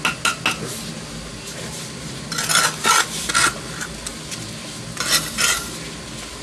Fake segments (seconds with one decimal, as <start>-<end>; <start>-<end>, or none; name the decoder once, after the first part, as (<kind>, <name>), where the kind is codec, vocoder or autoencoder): none